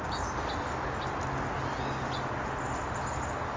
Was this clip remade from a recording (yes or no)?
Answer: no